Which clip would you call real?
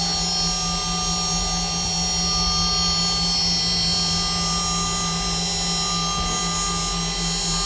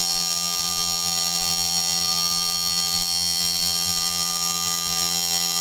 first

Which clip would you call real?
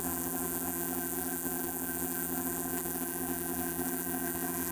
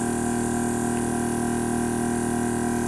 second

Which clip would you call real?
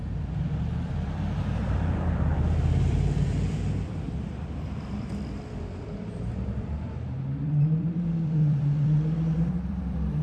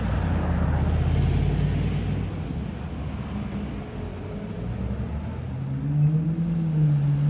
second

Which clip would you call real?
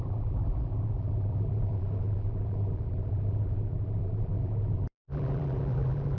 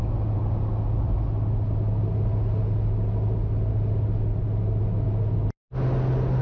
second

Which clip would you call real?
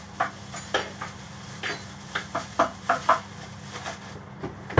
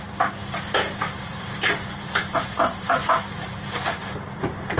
first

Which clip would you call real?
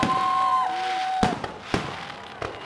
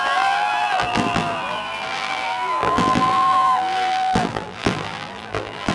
first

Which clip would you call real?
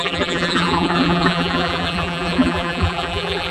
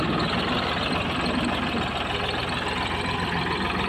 second